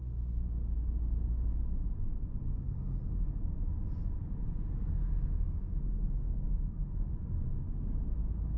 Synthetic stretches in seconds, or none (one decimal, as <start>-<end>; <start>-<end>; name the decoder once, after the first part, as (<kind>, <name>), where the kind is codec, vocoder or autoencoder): 2.4-3.2 (codec, SNAC); 4.9-7.1